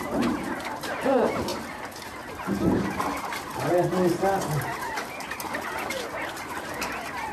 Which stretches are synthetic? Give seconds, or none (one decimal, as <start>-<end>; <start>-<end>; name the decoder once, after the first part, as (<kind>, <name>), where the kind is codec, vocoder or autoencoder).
none